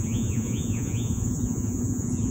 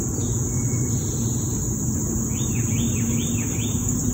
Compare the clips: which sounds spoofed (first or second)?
first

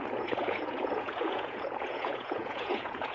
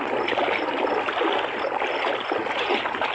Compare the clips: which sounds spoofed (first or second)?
first